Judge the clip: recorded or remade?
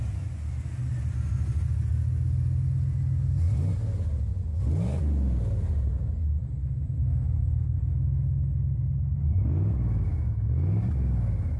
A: recorded